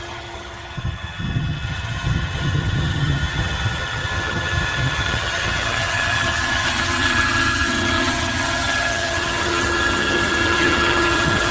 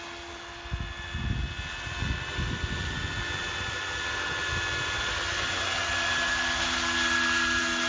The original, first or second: second